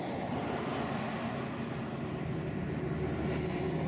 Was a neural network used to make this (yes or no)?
no